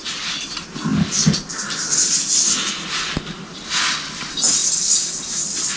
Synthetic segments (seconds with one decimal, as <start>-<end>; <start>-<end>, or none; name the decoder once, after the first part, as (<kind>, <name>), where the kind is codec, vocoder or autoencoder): none